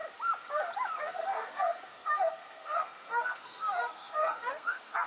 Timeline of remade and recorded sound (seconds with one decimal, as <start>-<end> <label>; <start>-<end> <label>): 0.0-1.0 recorded; 1.0-5.1 remade